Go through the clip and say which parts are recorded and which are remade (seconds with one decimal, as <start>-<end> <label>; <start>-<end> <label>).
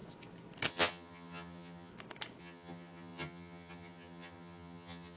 0.0-0.7 recorded; 0.7-1.9 remade; 1.9-2.4 recorded; 2.4-5.2 remade